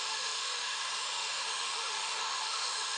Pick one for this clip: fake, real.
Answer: fake